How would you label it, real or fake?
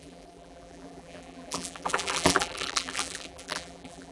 fake